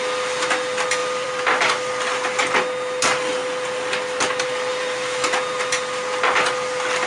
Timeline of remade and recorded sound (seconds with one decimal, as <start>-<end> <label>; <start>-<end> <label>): 0.0-1.0 recorded; 1.0-1.9 remade; 1.9-4.7 recorded; 4.7-5.6 remade; 5.6-7.1 recorded